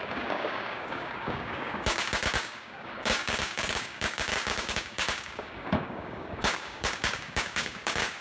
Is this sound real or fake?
fake